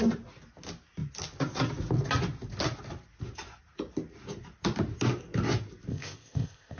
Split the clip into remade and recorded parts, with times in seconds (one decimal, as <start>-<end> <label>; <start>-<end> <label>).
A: 0.0-5.9 recorded; 5.9-6.8 remade

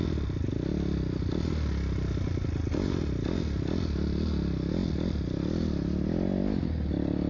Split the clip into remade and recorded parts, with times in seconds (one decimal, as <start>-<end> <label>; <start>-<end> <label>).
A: 0.0-7.3 recorded

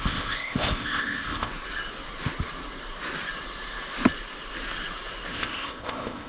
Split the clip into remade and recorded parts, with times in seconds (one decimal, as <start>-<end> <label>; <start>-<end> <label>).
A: 0.0-1.5 remade; 1.5-5.3 recorded; 5.3-6.3 remade

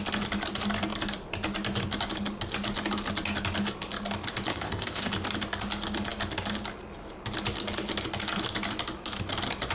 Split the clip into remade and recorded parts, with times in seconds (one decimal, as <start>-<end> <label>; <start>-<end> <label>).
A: 0.0-4.5 recorded; 4.5-5.1 remade; 5.1-9.7 recorded

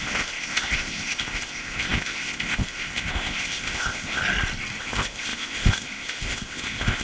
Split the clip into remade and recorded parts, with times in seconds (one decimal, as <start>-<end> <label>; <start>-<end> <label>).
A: 0.0-4.2 remade; 4.2-4.8 recorded; 4.8-7.0 remade

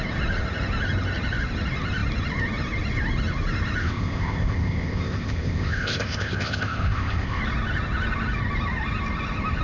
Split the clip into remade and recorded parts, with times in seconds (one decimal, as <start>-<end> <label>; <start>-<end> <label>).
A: 0.0-3.8 recorded; 3.8-7.4 remade; 7.4-9.6 recorded

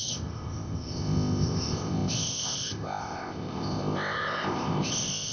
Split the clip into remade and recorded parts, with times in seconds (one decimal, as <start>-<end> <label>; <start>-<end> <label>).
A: 0.0-5.3 remade